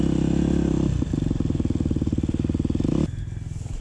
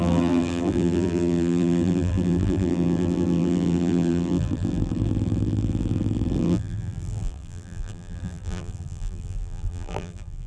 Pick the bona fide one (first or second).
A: first